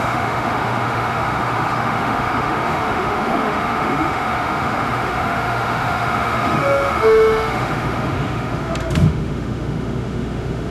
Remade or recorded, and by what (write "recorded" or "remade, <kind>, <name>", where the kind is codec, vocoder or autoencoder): remade, autoencoder, DAC-VAE